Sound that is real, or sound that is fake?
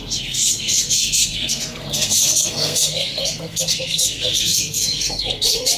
fake